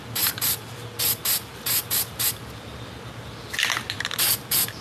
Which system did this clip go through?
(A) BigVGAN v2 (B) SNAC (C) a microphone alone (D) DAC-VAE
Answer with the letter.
C